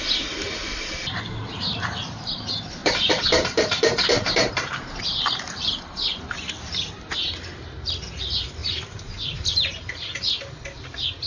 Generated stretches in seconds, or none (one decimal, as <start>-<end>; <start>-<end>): 2.8-7.7; 8.6-9.7